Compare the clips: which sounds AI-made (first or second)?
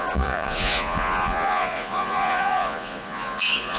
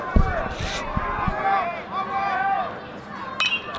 first